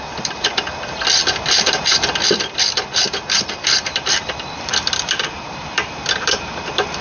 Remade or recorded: remade